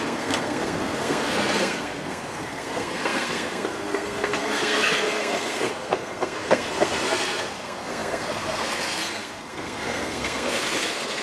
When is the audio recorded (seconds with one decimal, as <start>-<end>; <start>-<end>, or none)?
none